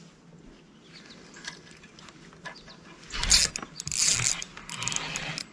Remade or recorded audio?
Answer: recorded